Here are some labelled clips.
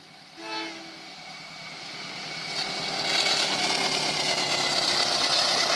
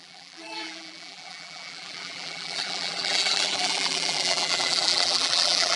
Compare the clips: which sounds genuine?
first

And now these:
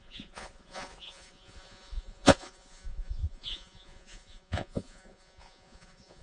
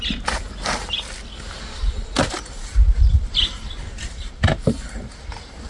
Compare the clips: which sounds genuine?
second